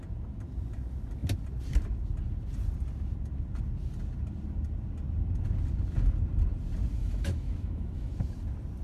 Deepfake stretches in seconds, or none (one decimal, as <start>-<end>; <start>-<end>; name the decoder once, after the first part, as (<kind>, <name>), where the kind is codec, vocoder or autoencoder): 7.0-8.1 (autoencoder, DAC-VAE)

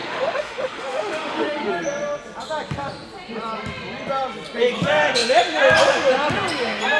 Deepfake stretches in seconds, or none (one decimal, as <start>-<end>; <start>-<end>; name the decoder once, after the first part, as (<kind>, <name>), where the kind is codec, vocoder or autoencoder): 0.0-1.7 (autoencoder, DAC-VAE)

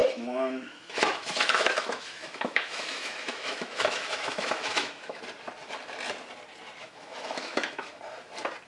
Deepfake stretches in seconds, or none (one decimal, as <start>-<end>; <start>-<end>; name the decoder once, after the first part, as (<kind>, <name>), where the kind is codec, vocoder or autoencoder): 0.0-5.2 (autoencoder, DAC-VAE); 6.8-8.0

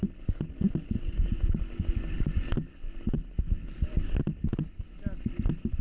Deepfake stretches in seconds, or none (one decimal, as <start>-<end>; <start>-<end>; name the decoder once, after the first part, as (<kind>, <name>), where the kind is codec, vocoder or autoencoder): none

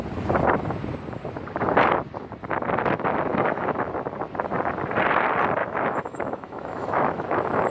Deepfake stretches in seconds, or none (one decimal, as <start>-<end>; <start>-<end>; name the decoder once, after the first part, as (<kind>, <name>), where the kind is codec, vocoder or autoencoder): 3.3-3.9 (autoencoder, DAC-VAE); 5.6-7.7

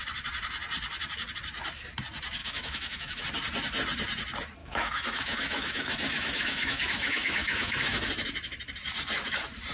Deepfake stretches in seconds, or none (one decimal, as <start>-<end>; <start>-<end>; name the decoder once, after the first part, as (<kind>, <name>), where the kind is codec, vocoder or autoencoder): 2.4-3.2 (autoencoder, DAC-VAE); 4.6-8.1